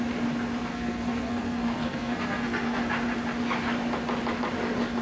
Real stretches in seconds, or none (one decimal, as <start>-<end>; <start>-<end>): 0.0-0.7; 2.8-5.0